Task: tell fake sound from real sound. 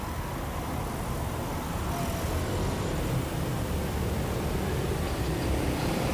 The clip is real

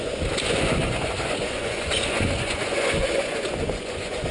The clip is fake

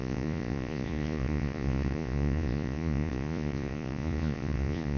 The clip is fake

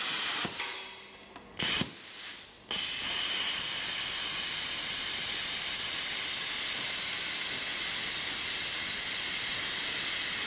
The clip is real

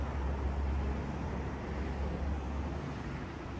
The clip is real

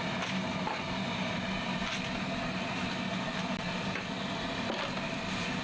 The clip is real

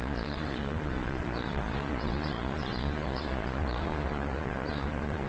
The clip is fake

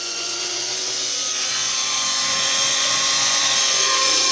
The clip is fake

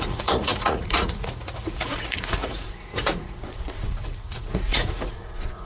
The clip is fake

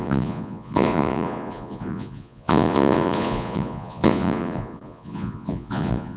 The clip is fake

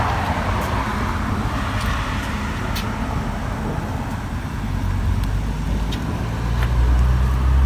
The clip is real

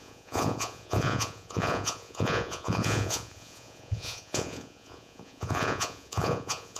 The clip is fake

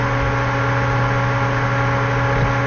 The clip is real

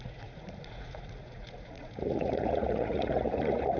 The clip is fake